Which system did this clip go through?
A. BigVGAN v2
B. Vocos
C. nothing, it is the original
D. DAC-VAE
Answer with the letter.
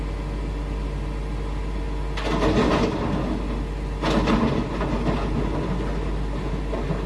C